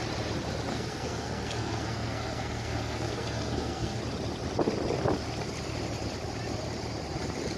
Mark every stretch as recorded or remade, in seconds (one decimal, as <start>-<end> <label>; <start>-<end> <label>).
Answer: 0.0-0.7 recorded; 0.7-4.0 remade; 4.0-7.6 recorded